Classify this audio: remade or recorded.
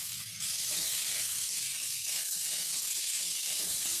remade